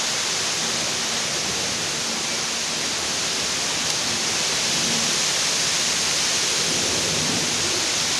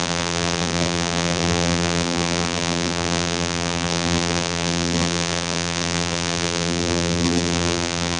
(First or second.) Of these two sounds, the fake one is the second